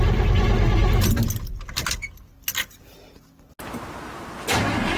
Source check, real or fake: real